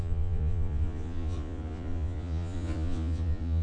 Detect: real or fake fake